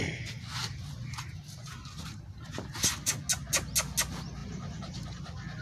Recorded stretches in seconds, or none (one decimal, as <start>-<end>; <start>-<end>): 0.0-0.6; 3.1-4.4; 5.1-5.6